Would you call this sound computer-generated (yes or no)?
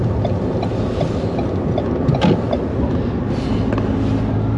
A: no